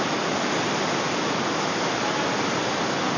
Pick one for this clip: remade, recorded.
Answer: recorded